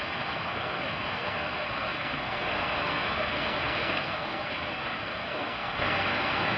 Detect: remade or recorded remade